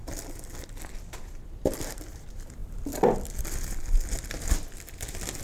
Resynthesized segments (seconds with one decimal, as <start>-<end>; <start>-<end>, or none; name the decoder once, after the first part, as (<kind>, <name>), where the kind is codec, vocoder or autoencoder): 0.0-1.0 (vocoder, BigVGAN v2)